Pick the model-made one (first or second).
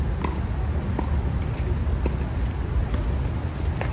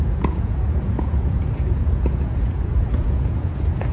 second